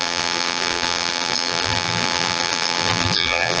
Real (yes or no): no